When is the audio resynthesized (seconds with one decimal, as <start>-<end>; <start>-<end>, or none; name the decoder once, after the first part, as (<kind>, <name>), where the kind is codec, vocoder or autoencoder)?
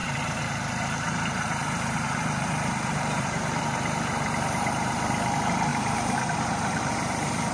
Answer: 0.0-7.5 (vocoder, BigVGAN v2)